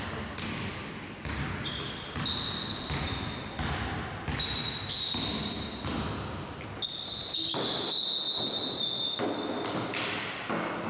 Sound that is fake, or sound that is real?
real